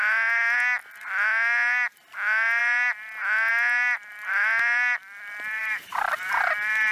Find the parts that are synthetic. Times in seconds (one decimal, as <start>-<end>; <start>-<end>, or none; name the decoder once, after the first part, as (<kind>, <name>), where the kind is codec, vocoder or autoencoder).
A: 5.6-6.3 (vocoder, BigVGAN v2)